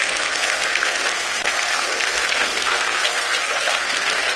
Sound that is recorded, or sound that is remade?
remade